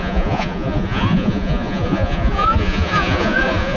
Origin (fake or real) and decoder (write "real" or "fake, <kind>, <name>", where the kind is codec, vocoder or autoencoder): fake, vocoder, Vocos